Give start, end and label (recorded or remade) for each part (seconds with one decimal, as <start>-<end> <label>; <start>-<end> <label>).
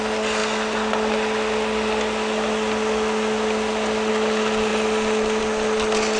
0.0-6.2 recorded